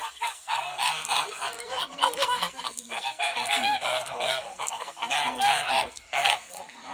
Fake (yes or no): yes